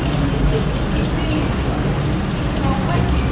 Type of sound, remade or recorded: recorded